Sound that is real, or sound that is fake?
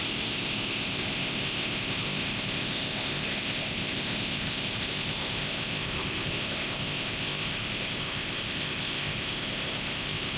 fake